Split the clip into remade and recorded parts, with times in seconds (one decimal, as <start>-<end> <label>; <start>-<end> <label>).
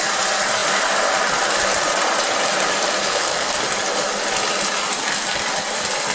0.0-3.0 recorded; 3.0-3.6 remade; 3.6-6.1 recorded